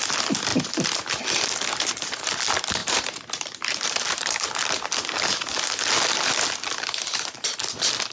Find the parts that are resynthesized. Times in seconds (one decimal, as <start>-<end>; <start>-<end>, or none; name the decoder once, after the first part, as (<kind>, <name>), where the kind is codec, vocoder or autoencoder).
2.8-4.8 (vocoder, BigVGAN v2)